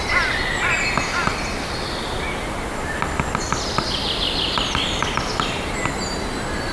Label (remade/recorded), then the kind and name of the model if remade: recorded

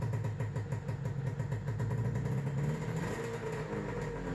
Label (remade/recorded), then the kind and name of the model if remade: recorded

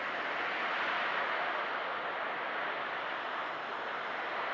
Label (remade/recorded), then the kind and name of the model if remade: recorded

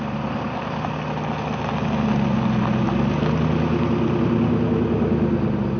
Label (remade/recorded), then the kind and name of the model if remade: recorded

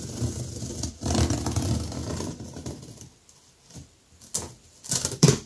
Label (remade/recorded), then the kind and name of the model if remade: recorded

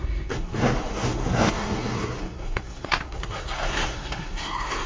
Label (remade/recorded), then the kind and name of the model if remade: remade, codec, SNAC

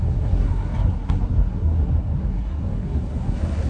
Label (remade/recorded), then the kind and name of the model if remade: remade, codec, SNAC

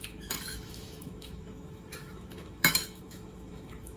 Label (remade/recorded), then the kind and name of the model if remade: remade, autoencoder, DAC-VAE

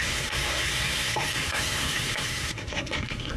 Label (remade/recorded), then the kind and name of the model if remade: remade, codec, SNAC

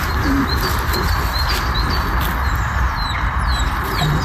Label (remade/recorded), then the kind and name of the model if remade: recorded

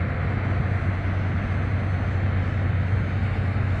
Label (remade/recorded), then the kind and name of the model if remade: recorded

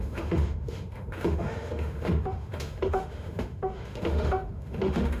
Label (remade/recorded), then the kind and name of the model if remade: remade, autoencoder, DAC-VAE